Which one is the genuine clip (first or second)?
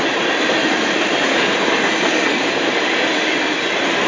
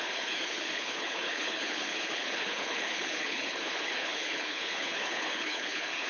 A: first